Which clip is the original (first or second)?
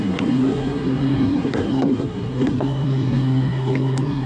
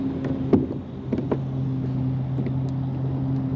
second